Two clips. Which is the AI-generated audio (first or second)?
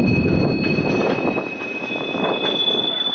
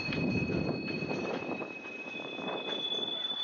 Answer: second